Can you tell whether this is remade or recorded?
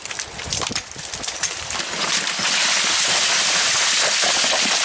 remade